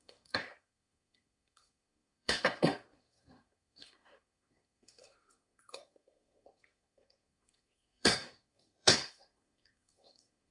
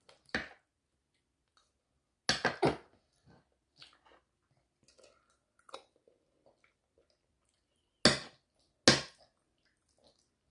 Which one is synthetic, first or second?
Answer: first